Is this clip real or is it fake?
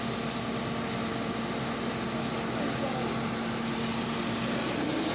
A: real